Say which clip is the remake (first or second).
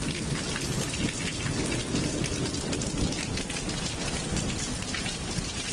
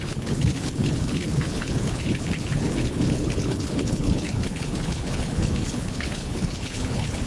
second